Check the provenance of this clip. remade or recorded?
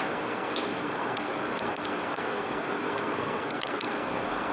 remade